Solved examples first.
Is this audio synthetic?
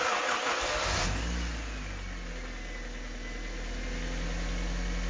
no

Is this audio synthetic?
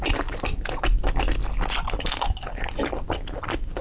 no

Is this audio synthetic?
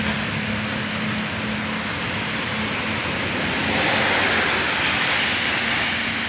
no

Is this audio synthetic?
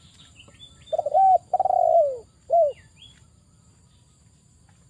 no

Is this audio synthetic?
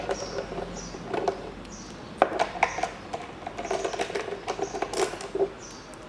no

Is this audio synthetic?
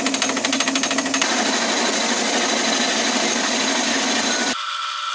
no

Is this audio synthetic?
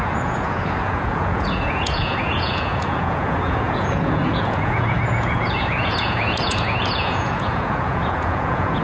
yes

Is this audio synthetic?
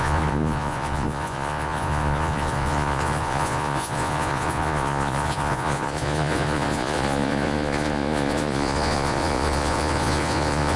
yes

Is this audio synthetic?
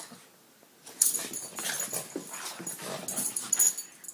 no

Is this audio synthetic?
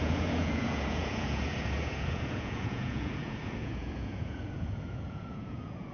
yes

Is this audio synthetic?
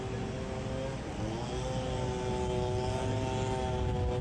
no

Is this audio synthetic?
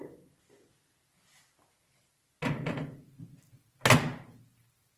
no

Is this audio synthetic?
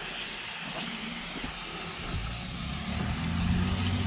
no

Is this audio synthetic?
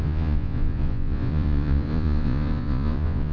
yes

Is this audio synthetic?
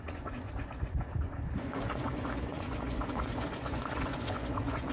yes